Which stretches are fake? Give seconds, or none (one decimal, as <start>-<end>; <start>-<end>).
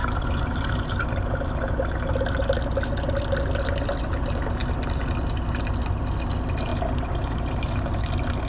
0.0-1.5; 6.7-8.1